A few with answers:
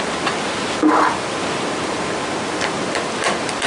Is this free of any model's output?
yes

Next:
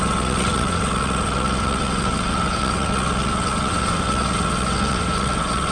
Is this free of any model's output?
no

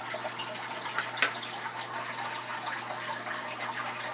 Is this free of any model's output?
yes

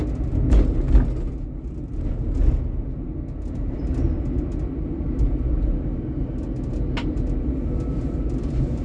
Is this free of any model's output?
yes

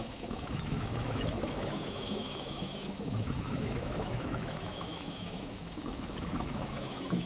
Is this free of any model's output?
no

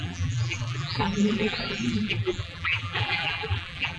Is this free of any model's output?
no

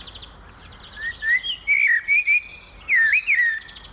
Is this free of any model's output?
yes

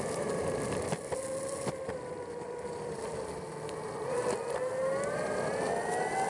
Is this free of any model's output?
yes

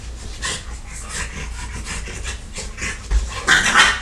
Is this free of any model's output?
yes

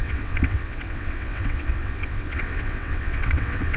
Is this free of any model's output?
no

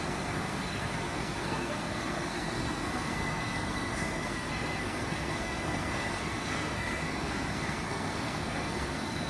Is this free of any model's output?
no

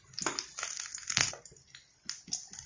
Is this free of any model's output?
yes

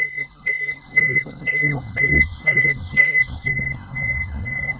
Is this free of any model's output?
no